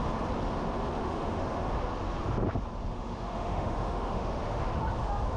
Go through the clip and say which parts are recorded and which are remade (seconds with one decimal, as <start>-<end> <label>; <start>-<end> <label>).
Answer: 0.0-1.0 recorded; 1.0-1.6 remade; 1.6-2.9 recorded; 2.9-4.6 remade; 4.6-5.4 recorded